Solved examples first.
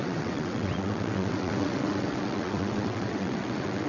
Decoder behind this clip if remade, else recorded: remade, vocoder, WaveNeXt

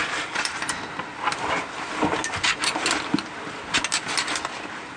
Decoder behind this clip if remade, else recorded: recorded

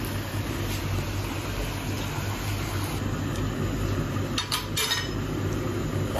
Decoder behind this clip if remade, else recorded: recorded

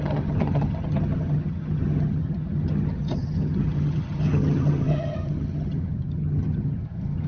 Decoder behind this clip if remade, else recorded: remade, vocoder, HiFi-GAN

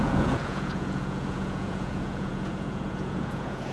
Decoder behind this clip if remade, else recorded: remade, vocoder, Vocos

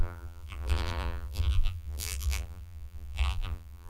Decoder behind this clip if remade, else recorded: remade, vocoder, BigVGAN v2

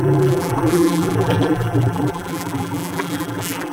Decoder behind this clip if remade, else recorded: remade, vocoder, BigVGAN v2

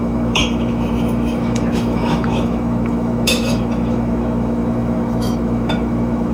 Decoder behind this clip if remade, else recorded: remade, autoencoder, DAC-VAE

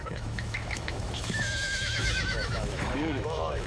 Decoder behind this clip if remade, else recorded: remade, autoencoder, DAC-VAE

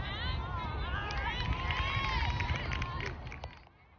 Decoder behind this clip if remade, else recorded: recorded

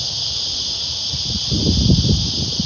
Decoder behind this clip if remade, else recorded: recorded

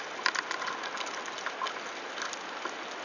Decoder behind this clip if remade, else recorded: recorded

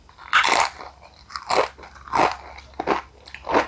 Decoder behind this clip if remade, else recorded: recorded